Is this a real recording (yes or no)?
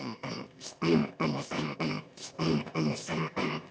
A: no